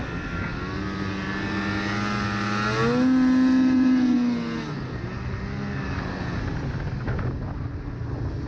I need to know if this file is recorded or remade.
recorded